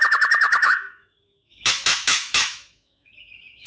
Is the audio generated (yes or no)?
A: yes